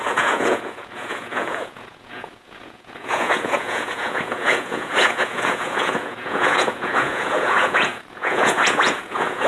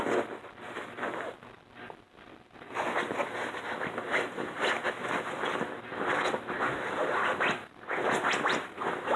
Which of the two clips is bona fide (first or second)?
second